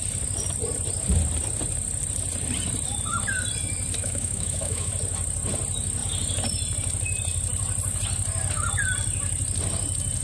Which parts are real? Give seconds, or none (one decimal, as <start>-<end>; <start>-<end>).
0.0-4.0; 4.9-10.2